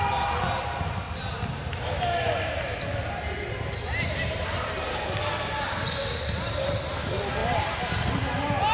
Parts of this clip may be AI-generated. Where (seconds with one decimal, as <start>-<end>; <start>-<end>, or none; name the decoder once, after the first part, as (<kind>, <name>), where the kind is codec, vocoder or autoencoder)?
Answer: none